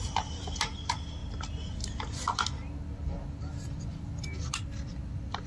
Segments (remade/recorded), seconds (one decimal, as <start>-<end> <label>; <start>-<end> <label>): 0.0-5.5 recorded